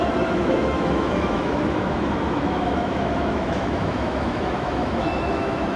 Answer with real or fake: fake